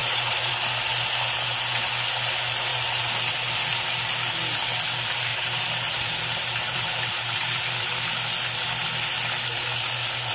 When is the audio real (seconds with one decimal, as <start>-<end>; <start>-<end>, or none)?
0.5-2.7; 3.2-5.3; 7.6-10.3